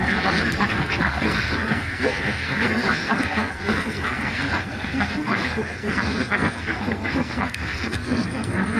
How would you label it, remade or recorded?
remade